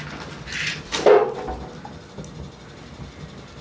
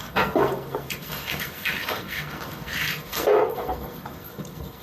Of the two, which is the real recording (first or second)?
first